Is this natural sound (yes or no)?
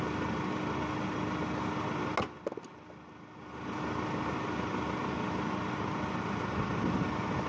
yes